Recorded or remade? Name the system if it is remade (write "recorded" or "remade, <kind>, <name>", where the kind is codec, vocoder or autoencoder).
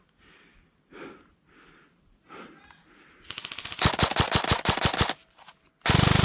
recorded